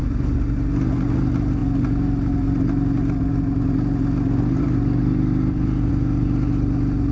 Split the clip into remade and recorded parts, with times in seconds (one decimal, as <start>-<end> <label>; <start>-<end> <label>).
0.0-7.1 recorded